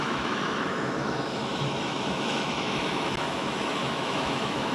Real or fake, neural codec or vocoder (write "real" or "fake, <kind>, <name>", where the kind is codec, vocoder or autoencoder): fake, autoencoder, DAC-VAE